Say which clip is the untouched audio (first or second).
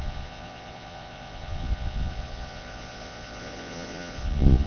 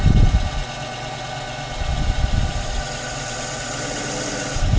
second